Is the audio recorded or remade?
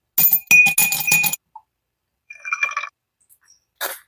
recorded